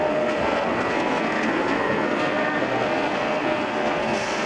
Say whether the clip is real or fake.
fake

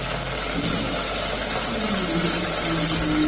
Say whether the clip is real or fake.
real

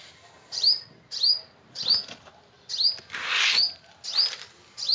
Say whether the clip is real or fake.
real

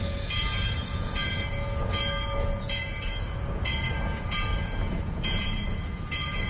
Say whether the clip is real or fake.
fake